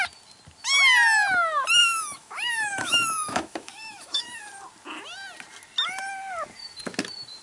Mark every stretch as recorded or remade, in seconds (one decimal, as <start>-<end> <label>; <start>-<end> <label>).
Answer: 0.0-1.8 recorded; 1.8-4.4 remade; 4.4-7.4 recorded